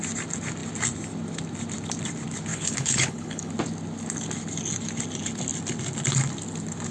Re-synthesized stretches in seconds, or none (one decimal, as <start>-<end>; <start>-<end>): 2.5-3.5